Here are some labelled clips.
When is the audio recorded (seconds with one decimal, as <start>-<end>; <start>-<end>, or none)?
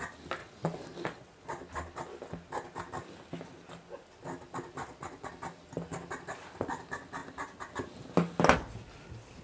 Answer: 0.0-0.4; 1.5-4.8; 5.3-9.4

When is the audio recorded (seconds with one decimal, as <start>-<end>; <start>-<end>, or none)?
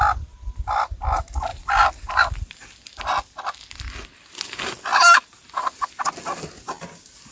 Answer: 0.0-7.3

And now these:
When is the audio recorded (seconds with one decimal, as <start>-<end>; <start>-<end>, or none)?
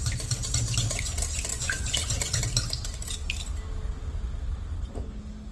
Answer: 0.0-1.5; 2.4-5.5